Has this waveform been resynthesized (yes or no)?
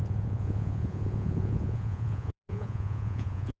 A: yes